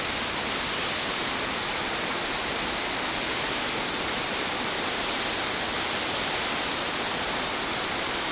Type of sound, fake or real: real